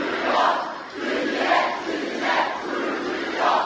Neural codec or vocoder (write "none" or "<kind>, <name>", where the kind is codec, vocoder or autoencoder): none